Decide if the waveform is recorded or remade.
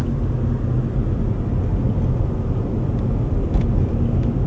recorded